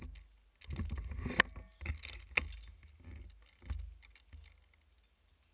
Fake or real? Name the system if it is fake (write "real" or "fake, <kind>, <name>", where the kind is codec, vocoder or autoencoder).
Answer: real